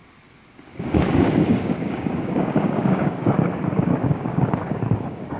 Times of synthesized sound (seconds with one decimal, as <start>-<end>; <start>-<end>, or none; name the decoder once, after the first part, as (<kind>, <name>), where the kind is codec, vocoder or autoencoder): 0.7-3.3 (codec, DAC); 4.0-5.4